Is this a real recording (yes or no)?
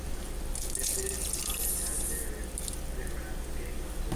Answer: yes